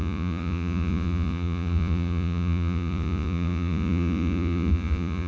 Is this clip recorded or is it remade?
remade